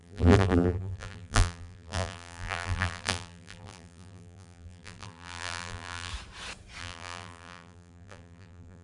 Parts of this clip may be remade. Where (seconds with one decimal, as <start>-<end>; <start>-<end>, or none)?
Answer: 0.0-6.1; 6.8-8.8